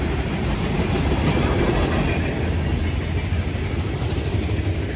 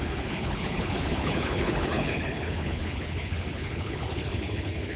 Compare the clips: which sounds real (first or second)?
first